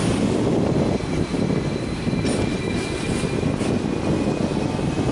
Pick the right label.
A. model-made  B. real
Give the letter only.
B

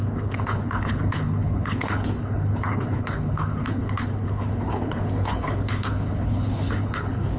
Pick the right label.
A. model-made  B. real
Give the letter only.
A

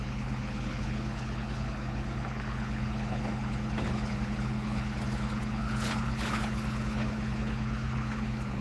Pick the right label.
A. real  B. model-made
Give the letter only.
B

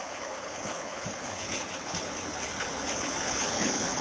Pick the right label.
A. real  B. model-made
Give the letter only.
B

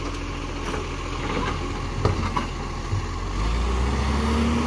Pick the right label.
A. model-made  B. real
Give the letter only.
B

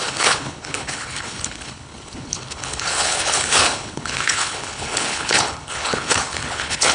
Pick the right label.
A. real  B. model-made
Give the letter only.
B